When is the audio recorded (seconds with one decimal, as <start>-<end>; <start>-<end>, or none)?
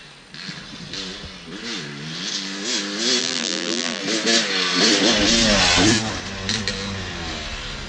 0.0-3.2; 4.0-7.9